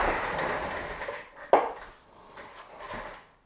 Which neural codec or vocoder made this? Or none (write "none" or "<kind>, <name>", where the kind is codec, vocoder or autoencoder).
none